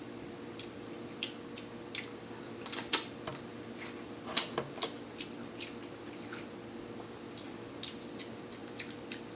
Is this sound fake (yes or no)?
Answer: no